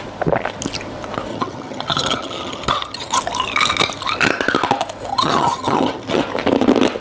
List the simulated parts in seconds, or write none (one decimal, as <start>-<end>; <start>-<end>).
1.3-3.2; 5.1-6.2